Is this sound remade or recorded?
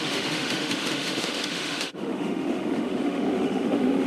remade